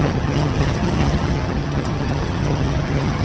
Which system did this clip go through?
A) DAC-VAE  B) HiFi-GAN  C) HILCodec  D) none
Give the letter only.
B